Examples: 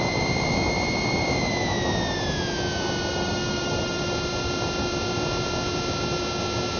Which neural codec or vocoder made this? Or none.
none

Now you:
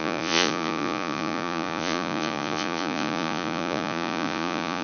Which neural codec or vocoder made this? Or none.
vocoder, Vocos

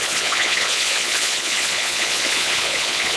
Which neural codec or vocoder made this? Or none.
vocoder, Vocos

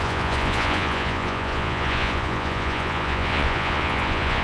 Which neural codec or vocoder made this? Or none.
vocoder, Vocos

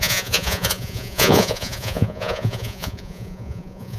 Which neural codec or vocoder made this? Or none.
vocoder, Vocos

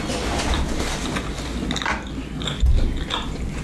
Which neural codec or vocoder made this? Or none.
none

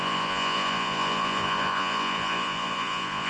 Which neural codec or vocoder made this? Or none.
vocoder, Vocos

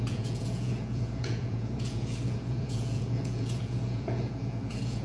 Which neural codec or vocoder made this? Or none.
vocoder, Vocos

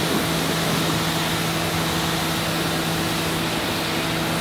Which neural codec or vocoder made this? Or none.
none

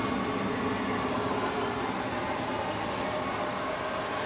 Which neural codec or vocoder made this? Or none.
none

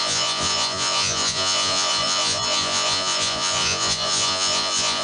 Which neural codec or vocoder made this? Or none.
vocoder, Vocos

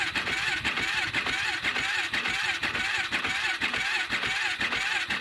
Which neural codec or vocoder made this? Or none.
none